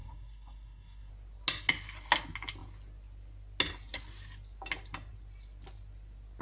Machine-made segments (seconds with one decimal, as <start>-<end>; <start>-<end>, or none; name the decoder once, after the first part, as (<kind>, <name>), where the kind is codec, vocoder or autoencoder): 0.0-1.1 (codec, SNAC)